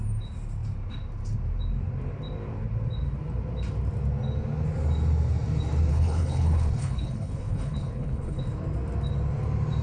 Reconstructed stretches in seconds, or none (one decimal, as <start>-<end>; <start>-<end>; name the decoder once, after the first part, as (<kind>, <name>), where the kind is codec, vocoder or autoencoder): 5.9-8.4 (codec, HILCodec)